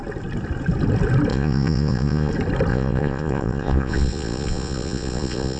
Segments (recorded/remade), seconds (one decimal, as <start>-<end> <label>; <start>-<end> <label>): 0.0-1.3 recorded; 1.3-2.3 remade; 2.3-2.7 recorded; 2.7-5.6 remade